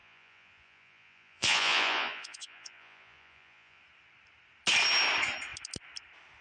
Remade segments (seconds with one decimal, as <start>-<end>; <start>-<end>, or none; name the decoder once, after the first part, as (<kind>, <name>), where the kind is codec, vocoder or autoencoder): 0.0-3.8 (vocoder, Vocos)